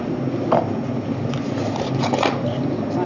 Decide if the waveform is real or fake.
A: real